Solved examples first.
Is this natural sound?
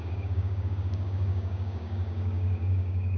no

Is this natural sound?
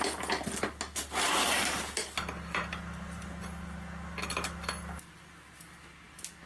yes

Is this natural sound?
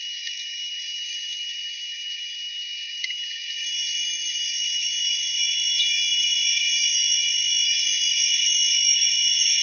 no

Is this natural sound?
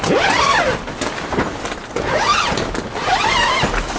yes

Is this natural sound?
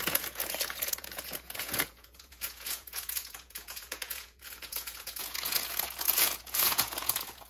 no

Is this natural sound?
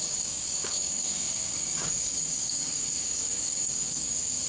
no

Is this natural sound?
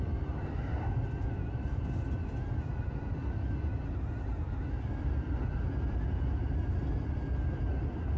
yes